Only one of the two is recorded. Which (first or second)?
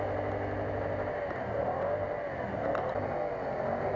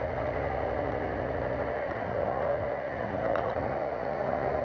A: first